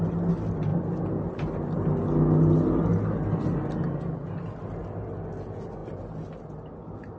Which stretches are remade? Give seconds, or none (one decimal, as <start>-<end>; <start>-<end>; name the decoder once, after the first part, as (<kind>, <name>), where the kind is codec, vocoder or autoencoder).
none